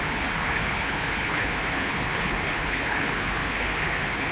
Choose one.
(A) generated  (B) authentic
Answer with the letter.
A